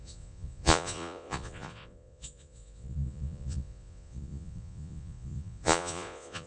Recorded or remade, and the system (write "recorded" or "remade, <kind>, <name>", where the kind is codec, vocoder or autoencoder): remade, vocoder, Vocos